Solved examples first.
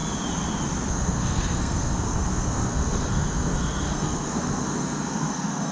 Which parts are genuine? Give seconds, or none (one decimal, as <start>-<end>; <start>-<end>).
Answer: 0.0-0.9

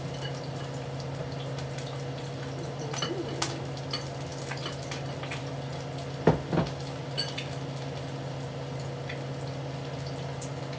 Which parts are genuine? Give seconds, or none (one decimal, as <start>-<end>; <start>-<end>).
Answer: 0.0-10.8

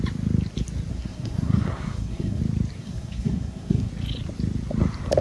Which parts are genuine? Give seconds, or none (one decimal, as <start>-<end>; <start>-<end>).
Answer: 0.0-0.9; 2.4-2.8; 3.9-5.2

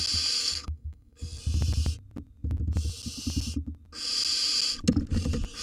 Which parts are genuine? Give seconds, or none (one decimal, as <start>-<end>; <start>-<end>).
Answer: 0.0-0.4; 1.4-5.6